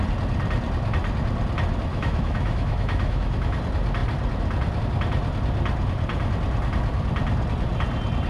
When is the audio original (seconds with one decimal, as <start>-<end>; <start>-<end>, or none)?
0.0-1.9; 3.6-8.3